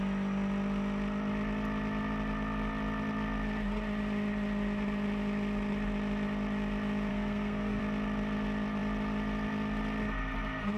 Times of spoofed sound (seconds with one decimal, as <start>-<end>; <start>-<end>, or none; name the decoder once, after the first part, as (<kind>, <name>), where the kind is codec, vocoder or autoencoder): 7.1-7.8 (codec, SNAC)